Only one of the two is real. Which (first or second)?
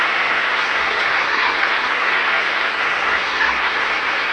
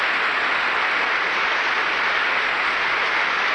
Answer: second